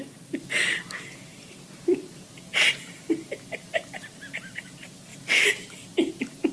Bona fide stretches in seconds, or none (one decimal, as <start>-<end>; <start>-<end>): 0.0-6.5